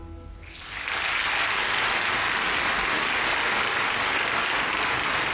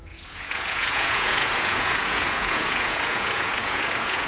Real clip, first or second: first